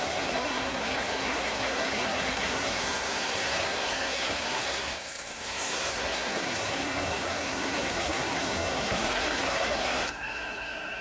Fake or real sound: fake